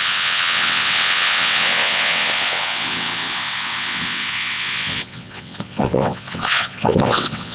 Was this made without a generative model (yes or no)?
no